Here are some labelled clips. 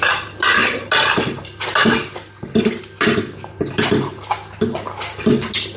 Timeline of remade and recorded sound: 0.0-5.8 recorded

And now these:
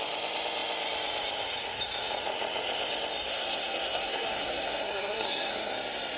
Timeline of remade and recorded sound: 0.0-3.3 recorded; 3.3-5.7 remade; 5.7-6.2 recorded